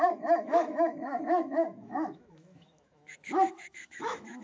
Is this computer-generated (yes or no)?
yes